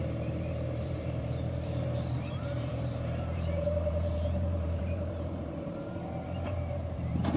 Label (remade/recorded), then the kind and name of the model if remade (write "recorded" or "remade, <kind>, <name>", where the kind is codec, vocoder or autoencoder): remade, vocoder, BigVGAN v2